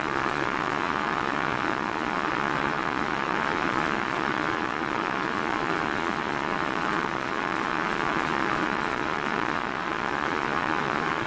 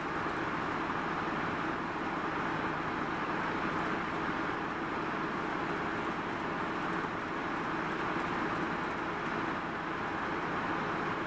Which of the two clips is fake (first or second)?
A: first